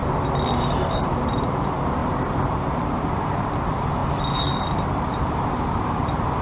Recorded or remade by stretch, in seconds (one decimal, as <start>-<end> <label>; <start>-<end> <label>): 0.0-0.6 recorded; 0.6-4.0 remade; 4.0-4.6 recorded; 4.6-6.4 remade